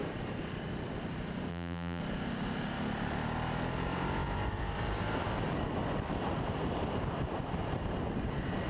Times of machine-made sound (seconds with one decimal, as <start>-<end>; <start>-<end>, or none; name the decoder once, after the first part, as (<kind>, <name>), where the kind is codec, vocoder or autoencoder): 1.5-2.0 (vocoder, BigVGAN v2)